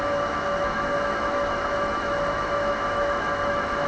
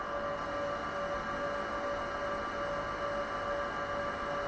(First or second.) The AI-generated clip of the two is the first